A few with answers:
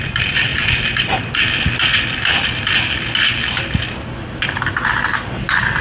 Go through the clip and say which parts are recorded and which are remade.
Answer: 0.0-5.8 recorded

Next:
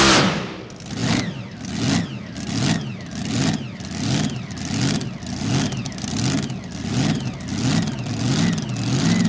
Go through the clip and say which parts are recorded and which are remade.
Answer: 0.0-9.3 recorded

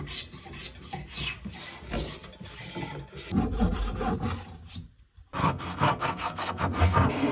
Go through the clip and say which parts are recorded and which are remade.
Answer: 0.0-5.4 recorded; 5.4-7.3 remade

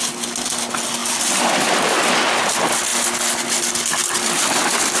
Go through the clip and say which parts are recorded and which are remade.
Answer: 0.0-5.0 recorded

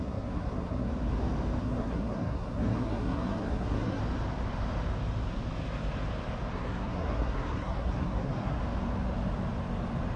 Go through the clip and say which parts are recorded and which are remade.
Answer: 0.0-0.9 remade; 0.9-1.6 recorded; 1.6-4.0 remade; 4.0-6.5 recorded; 6.5-8.6 remade; 8.6-10.2 recorded